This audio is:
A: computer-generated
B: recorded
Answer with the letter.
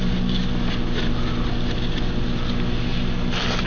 B